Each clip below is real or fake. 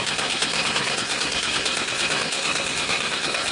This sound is fake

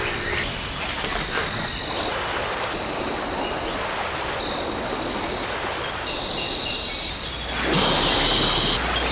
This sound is real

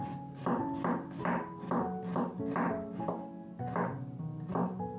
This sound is real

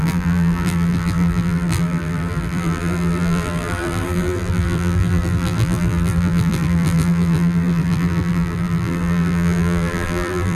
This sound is fake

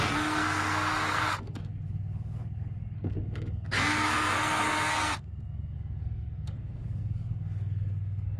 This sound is fake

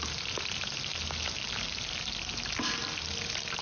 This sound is real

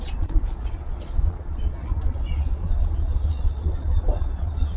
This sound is fake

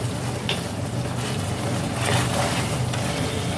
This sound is real